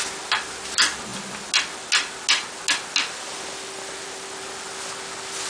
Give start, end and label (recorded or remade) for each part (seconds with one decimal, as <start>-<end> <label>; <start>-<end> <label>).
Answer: 0.0-5.5 recorded